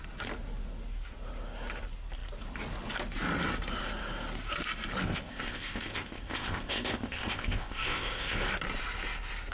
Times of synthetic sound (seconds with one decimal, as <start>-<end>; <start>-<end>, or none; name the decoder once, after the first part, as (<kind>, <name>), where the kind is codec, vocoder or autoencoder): 5.0-8.5 (codec, ZipCodec)